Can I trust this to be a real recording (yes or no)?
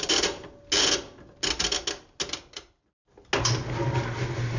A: yes